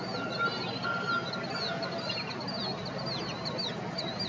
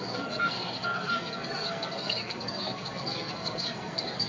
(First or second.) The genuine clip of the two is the first